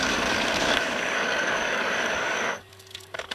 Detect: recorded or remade remade